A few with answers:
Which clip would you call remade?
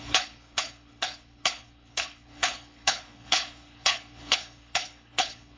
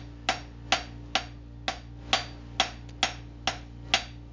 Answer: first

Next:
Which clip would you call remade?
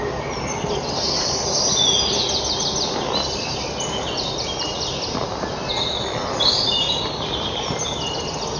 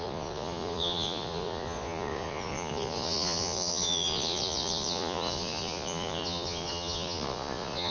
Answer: second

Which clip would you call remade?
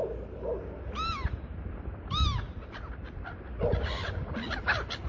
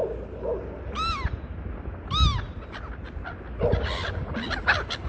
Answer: first